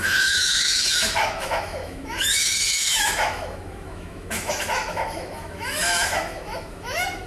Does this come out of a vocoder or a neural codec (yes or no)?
yes